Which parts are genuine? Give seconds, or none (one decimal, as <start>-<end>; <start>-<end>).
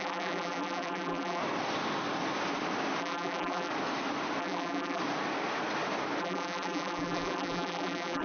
1.4-3.0; 3.7-4.4; 5.0-6.2